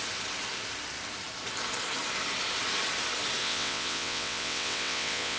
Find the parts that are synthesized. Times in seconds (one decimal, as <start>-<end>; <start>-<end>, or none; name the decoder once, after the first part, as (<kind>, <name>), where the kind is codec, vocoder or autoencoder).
3.4-5.4 (vocoder, WaveNeXt)